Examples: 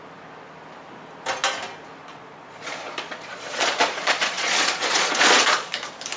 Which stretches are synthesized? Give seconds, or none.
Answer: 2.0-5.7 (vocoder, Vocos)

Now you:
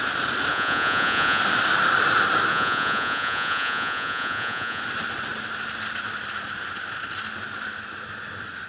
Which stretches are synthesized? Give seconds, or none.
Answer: 0.5-1.4 (vocoder, Vocos); 2.5-4.8

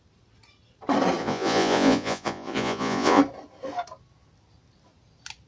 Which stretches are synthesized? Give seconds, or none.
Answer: 1.2-3.2 (vocoder, Vocos)

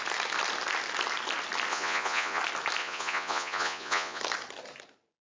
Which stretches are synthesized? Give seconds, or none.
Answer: 1.7-2.4 (vocoder, Vocos); 2.8-4.2

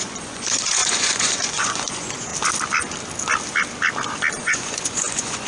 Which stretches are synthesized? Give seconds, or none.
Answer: 0.0-2.3 (vocoder, Vocos); 4.4-5.5

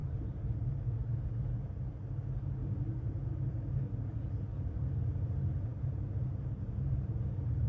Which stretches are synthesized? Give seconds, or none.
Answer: none

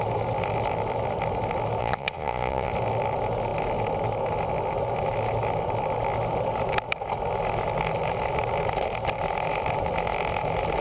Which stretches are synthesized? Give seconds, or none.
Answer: 1.8-2.7 (vocoder, Vocos)